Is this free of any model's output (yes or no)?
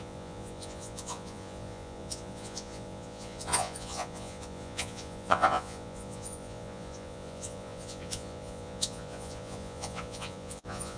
no